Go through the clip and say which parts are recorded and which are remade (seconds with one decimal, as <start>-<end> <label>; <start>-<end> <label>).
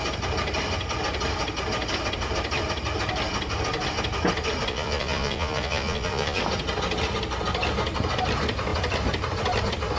0.0-4.7 recorded; 4.7-6.4 remade; 6.4-10.0 recorded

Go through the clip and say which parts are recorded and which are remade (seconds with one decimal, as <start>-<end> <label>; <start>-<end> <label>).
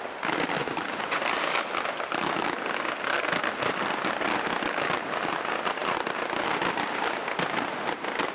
0.0-0.6 recorded; 0.6-1.2 remade; 1.2-8.3 recorded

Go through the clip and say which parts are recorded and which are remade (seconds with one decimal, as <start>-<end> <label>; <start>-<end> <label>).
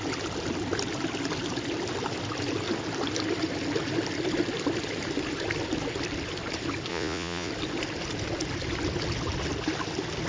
0.0-6.9 recorded; 6.9-7.5 remade; 7.5-10.3 recorded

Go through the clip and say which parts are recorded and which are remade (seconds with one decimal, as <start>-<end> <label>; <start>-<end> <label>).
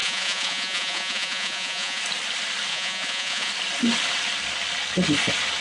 0.0-2.0 remade; 2.0-2.7 recorded; 2.7-3.5 remade; 3.5-5.6 recorded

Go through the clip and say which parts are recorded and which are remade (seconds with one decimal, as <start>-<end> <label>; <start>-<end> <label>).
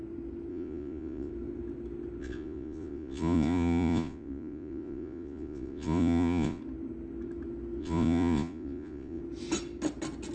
0.0-0.5 recorded; 0.5-1.3 remade; 1.3-2.2 recorded; 2.2-6.6 remade; 6.6-7.8 recorded; 7.8-9.2 remade; 9.2-10.3 recorded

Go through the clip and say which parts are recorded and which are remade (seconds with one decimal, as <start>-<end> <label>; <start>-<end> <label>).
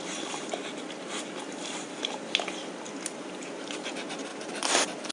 0.0-5.1 recorded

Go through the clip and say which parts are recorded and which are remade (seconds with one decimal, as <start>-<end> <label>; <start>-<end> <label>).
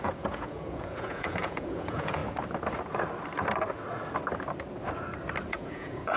0.0-2.2 remade; 2.2-5.5 recorded; 5.5-6.2 remade